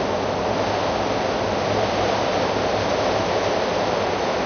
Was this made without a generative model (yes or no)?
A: yes